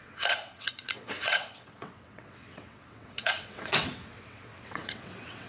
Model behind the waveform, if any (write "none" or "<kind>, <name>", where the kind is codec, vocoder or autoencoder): vocoder, WaveNeXt